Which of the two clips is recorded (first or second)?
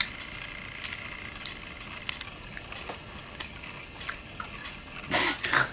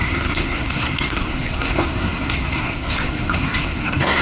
first